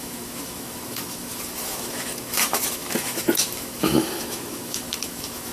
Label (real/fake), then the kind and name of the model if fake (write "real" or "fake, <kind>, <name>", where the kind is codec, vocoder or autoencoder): fake, autoencoder, DAC-VAE